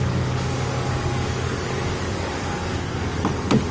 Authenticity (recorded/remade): remade